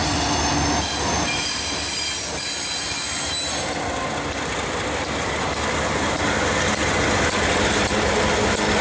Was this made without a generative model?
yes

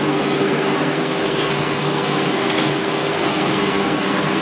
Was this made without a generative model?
no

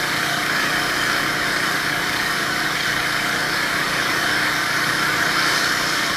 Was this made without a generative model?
no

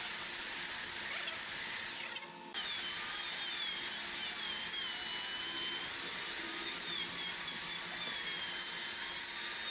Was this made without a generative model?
yes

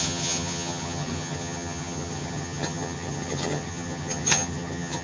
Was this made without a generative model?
no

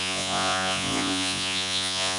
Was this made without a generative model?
no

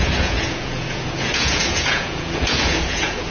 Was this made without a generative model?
no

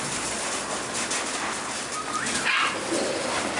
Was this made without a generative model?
yes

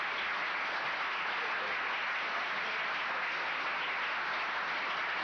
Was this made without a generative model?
yes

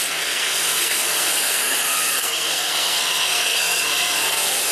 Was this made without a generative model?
no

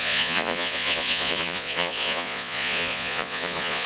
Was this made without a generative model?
no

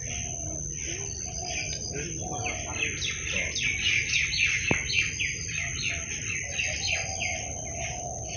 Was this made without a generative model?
yes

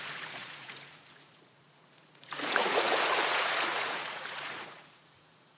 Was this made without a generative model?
no